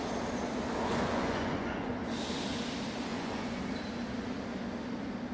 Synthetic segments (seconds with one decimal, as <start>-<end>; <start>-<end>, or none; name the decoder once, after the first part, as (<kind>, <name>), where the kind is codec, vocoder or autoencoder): 0.8-1.9 (vocoder, Vocos); 3.1-3.6